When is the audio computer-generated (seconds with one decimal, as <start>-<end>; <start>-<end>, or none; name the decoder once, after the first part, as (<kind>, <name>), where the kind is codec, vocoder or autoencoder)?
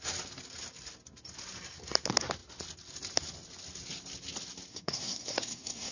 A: 4.7-5.9 (codec, SNAC)